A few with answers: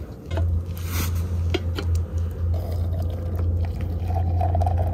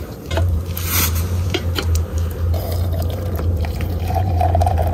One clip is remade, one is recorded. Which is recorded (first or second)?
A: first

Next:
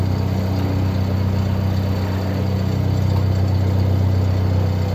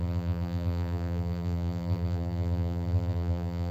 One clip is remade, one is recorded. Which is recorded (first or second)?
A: first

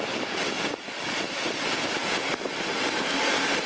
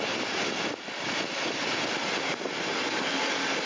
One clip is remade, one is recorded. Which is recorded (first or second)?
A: second